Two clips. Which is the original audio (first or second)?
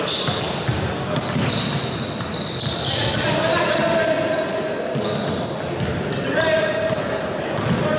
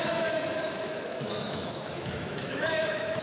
first